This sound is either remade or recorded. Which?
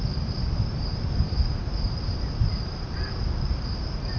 remade